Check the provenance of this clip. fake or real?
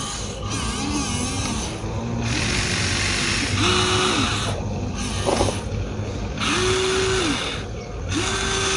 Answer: real